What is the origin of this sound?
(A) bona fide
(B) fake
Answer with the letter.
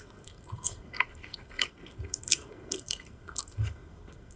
B